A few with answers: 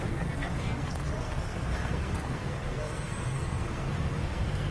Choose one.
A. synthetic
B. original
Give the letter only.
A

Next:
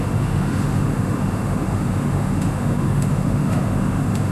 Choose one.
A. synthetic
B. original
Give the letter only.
A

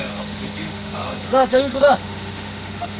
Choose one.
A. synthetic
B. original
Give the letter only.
A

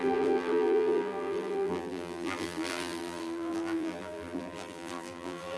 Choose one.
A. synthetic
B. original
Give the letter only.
A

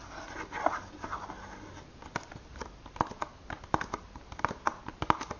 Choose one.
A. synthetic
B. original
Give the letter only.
B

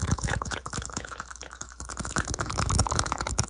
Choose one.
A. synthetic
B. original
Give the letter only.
A